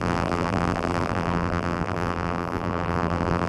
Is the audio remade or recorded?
remade